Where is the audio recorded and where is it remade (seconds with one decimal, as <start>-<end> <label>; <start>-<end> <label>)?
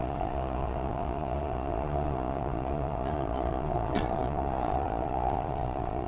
0.0-6.1 remade